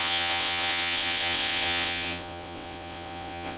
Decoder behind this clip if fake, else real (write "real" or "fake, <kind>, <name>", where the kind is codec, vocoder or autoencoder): fake, vocoder, WaveNeXt